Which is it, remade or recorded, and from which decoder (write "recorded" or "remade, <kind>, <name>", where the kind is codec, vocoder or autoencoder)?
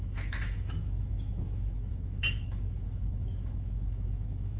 remade, autoencoder, DAC-VAE